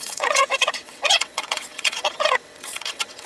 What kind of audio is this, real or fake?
fake